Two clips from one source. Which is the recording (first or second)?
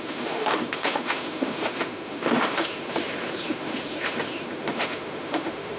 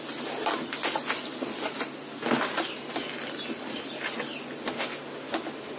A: second